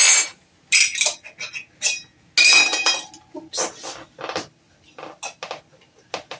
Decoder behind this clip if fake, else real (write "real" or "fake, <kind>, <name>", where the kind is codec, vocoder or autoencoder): real